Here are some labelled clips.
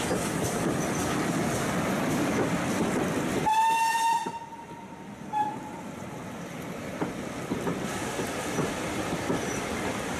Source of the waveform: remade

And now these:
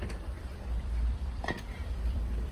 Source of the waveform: remade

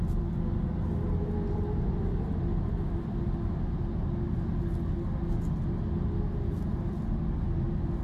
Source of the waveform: recorded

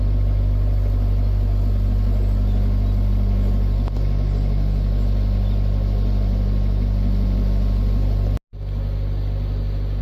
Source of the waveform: recorded